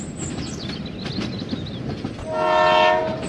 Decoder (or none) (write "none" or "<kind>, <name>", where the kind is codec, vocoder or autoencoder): none